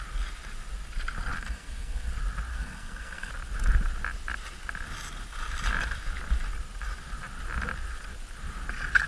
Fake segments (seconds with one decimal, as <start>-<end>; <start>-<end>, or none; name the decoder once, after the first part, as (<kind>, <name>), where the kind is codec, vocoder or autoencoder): 1.4-2.1 (codec, SNAC); 2.5-3.3